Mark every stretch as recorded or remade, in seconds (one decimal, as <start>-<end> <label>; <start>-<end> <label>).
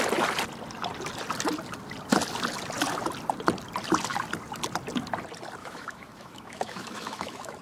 0.0-5.6 recorded; 5.6-7.6 remade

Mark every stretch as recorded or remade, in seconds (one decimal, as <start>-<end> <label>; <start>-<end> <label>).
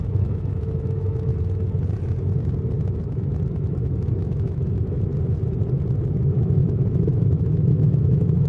0.0-1.3 remade; 1.3-3.0 recorded; 3.0-5.1 remade; 5.1-6.0 recorded; 6.0-8.5 remade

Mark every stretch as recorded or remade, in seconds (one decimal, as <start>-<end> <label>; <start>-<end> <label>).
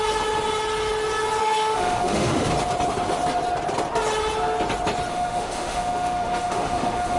0.0-1.4 recorded; 1.4-2.5 remade; 2.5-5.1 recorded; 5.1-7.2 remade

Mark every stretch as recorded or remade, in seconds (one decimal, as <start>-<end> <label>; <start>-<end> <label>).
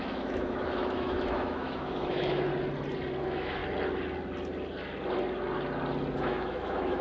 0.0-2.5 remade; 2.5-3.2 recorded; 3.2-3.6 remade; 3.6-6.2 recorded; 6.2-7.0 remade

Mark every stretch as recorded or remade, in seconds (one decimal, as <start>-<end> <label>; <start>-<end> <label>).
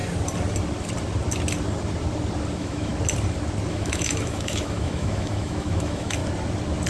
0.0-2.5 recorded; 2.5-2.9 remade; 2.9-3.7 recorded; 3.7-6.2 remade; 6.2-6.9 recorded